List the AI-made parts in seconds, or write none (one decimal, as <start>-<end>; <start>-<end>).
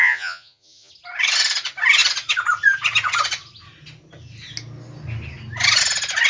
0.0-0.9